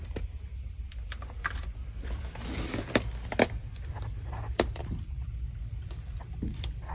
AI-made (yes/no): no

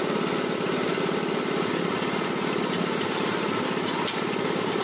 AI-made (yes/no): no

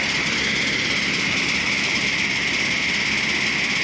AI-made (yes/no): yes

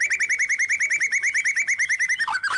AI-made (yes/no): no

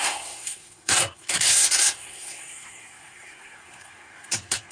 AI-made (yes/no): yes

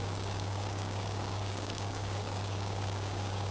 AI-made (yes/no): yes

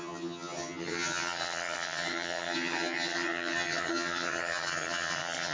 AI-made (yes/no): yes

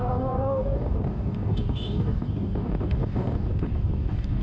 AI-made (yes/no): yes